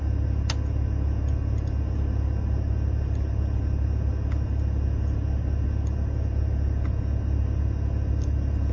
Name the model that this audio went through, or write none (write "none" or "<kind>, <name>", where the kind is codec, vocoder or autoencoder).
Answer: none